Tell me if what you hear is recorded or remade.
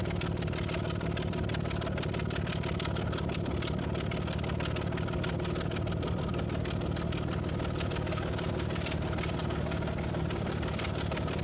recorded